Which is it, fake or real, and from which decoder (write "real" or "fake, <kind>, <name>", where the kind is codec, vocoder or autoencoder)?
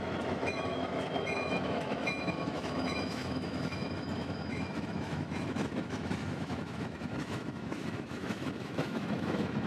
fake, autoencoder, DAC-VAE